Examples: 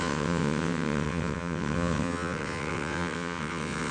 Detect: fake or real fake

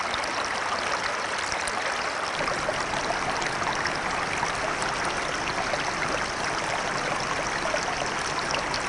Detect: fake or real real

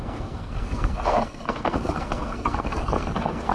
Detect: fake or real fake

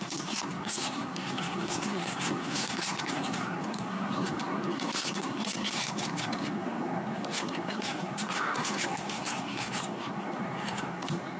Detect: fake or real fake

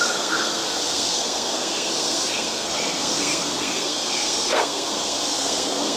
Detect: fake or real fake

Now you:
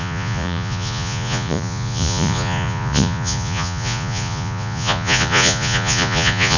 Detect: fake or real fake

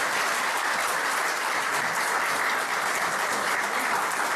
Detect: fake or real real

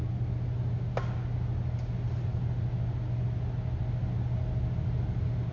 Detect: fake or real real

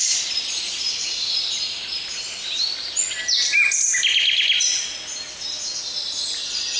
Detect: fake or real real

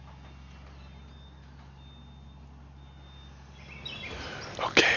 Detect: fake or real real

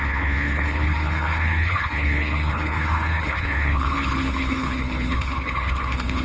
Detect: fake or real fake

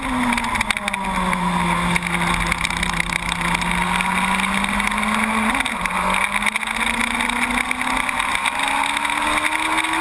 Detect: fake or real real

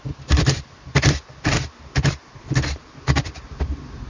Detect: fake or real fake